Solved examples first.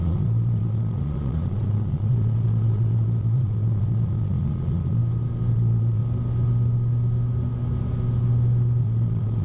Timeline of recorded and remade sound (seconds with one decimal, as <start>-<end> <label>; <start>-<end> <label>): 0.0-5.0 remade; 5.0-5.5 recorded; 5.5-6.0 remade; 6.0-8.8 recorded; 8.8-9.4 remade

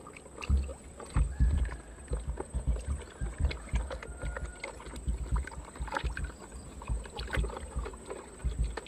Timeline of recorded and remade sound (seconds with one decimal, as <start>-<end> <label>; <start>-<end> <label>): 0.0-8.9 recorded

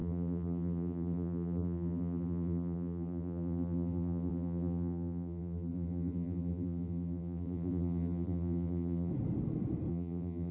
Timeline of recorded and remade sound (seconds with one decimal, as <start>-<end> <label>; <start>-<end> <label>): 0.0-9.1 remade; 9.1-9.9 recorded; 9.9-10.5 remade